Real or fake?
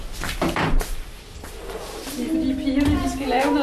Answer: real